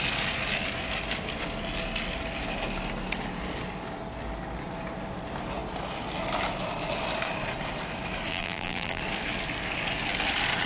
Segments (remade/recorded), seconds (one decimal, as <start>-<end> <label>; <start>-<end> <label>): 0.0-8.3 recorded; 8.3-9.0 remade; 9.0-10.7 recorded